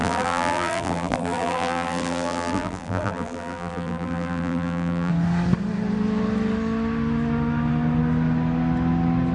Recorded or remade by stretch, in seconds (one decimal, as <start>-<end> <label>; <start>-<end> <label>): 0.0-5.1 remade; 5.1-9.3 recorded